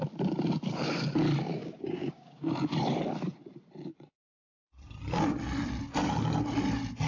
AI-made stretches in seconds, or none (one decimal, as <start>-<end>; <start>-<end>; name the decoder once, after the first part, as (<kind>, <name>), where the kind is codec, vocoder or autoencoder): 1.4-2.4 (codec, DAC)